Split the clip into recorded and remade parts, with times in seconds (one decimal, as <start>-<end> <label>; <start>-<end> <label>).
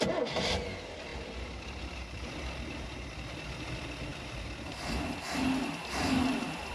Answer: 0.0-6.7 recorded